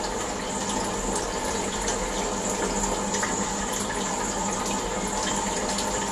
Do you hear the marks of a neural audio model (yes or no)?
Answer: no